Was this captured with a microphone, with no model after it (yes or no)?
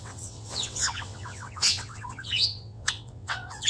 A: no